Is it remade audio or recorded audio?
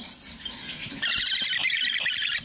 recorded